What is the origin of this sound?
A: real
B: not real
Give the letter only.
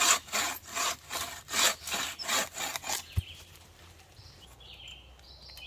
A